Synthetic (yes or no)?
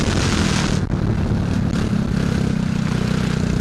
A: no